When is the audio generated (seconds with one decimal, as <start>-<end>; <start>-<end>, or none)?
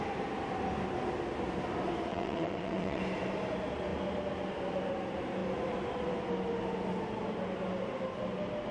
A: 2.1-3.0